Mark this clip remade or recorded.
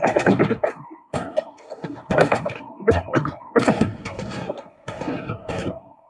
remade